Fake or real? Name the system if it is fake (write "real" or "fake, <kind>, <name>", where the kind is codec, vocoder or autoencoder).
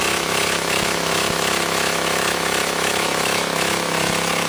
fake, autoencoder, DAC-VAE